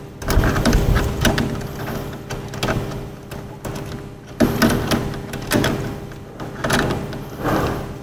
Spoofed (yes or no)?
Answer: no